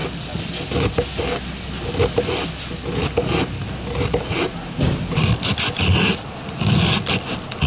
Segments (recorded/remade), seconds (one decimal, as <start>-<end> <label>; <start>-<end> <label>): 0.0-7.7 recorded